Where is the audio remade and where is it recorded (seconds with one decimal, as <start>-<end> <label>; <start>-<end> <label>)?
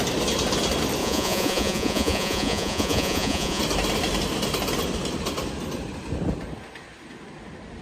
0.0-1.0 recorded; 1.0-3.6 remade; 3.6-7.8 recorded